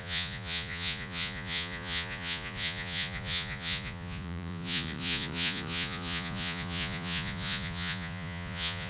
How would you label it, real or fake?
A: fake